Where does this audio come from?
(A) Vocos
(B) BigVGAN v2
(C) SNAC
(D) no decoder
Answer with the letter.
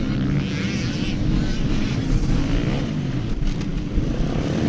D